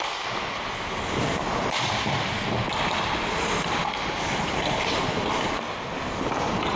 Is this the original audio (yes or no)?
yes